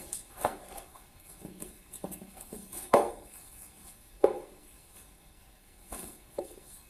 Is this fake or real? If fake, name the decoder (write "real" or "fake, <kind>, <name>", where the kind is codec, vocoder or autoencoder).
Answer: fake, codec, SNAC